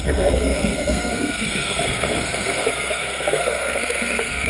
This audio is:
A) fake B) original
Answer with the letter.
A